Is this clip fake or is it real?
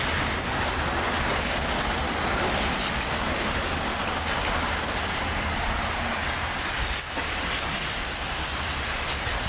real